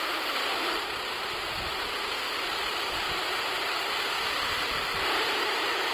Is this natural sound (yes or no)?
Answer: yes